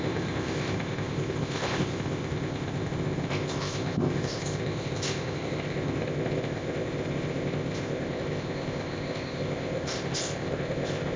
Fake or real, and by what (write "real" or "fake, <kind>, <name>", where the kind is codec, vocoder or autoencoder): fake, codec, ZipCodec